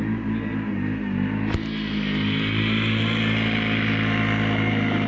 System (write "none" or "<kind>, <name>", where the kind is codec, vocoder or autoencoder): none